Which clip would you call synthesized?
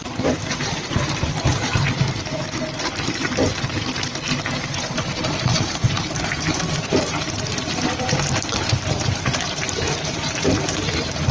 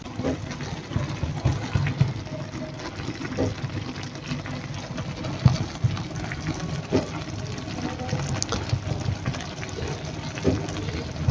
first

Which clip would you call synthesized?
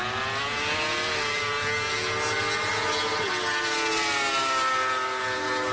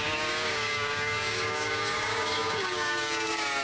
second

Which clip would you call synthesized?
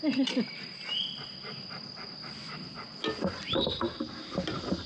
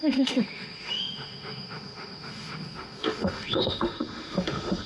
second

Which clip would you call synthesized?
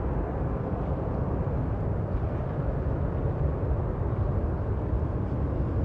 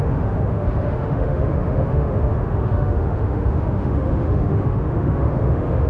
second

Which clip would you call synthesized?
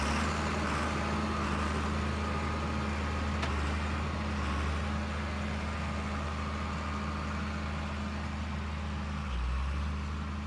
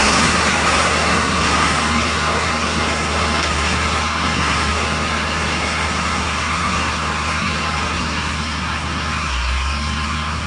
second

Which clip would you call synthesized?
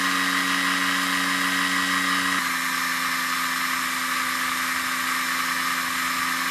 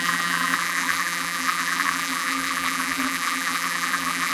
second